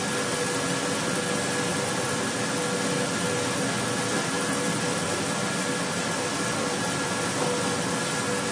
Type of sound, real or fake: real